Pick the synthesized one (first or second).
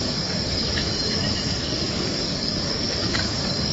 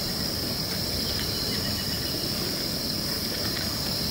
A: first